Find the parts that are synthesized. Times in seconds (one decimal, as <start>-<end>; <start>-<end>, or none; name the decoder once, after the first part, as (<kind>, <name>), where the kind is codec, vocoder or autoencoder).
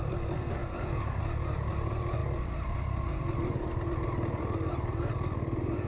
0.0-5.9 (vocoder, BigVGAN v2)